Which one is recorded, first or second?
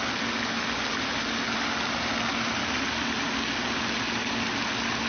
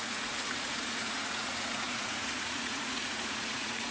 first